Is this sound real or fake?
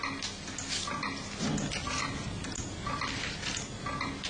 real